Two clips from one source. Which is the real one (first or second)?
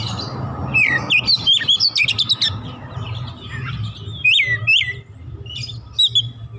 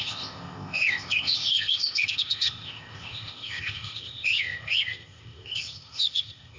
first